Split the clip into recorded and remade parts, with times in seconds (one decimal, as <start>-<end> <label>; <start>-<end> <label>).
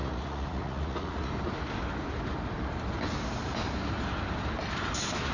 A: 0.0-1.3 remade; 1.3-5.3 recorded